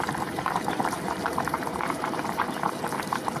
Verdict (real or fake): fake